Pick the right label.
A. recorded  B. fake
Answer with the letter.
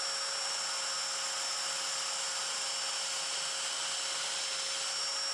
A